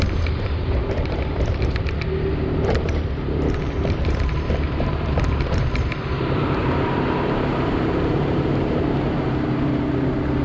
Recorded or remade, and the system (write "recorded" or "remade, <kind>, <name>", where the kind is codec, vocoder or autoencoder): remade, vocoder, BigVGAN v2